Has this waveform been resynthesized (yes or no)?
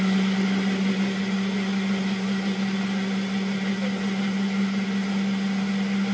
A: no